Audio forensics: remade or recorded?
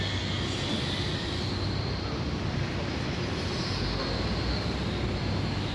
recorded